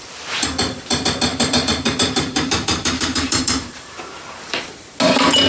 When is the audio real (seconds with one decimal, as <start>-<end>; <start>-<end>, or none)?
0.0-1.3; 4.6-5.5